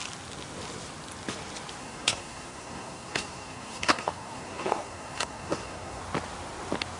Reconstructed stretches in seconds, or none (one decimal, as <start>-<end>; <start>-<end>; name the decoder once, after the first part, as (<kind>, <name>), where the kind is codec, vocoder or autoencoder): 1.8-6.0 (codec, SNAC)